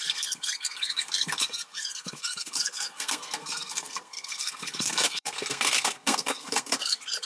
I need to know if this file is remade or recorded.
remade